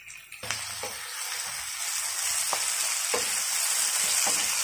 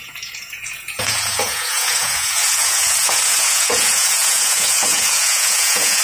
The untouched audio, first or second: first